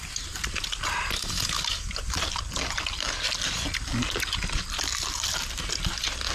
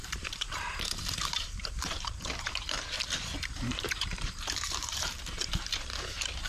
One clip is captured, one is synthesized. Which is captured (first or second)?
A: first